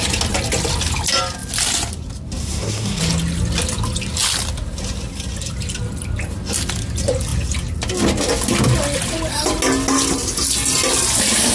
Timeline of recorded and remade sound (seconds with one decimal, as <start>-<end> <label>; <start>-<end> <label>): 0.0-2.4 recorded; 2.4-3.0 remade; 3.0-11.5 recorded